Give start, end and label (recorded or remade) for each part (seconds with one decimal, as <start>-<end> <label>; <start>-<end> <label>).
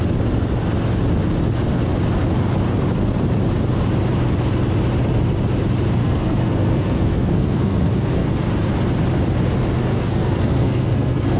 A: 0.0-6.0 recorded; 6.0-8.3 remade; 8.3-9.9 recorded; 9.9-11.4 remade